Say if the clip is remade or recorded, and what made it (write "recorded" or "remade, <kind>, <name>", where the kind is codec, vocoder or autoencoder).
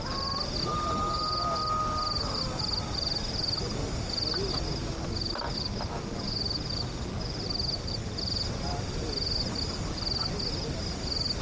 recorded